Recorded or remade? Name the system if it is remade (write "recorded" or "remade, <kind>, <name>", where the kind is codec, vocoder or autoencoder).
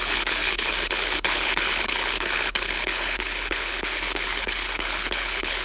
remade, codec, HILCodec